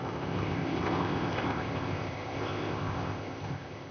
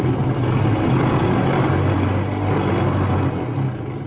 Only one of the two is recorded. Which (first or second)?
second